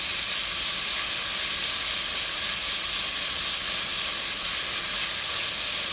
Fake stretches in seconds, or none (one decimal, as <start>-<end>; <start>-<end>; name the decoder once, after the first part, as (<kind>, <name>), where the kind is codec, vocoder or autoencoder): none